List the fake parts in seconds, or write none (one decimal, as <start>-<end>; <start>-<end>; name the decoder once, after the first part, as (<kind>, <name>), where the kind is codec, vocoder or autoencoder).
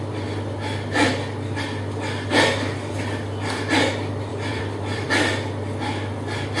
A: 4.3-5.1 (vocoder, BigVGAN v2)